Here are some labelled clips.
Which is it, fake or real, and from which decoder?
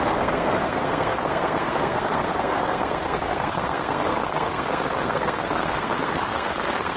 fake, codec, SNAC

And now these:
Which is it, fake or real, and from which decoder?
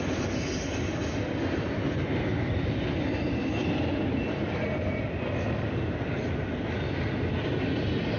real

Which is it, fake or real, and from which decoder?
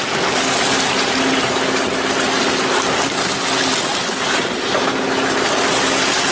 real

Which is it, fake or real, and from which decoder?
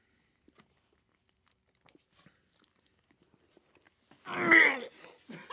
real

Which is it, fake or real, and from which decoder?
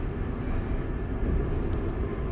real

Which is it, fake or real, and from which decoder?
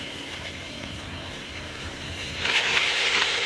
fake, codec, SNAC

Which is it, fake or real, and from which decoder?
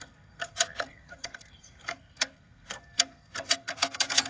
fake, codec, SNAC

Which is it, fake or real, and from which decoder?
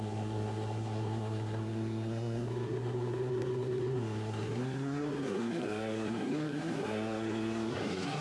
fake, codec, SNAC